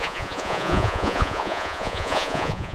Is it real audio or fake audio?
fake